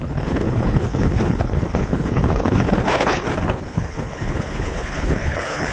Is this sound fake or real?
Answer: fake